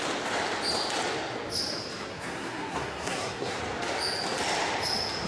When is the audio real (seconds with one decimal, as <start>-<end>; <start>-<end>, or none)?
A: 0.0-2.1; 3.6-5.3